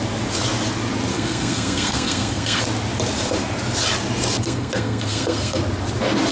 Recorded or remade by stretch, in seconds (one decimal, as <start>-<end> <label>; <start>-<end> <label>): 0.0-1.1 recorded; 1.1-2.6 remade; 2.6-4.4 recorded; 4.4-5.6 remade; 5.6-6.3 recorded